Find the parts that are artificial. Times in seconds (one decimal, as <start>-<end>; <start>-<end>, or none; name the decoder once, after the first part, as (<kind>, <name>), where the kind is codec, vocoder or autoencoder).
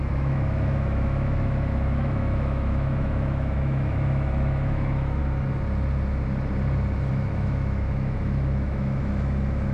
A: 0.0-5.2 (autoencoder, DAC-VAE); 7.1-9.7